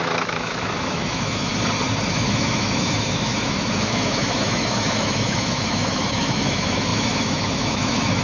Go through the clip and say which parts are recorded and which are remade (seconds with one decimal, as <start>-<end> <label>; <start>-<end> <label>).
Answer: 0.0-1.5 remade; 1.5-2.1 recorded; 2.1-8.2 remade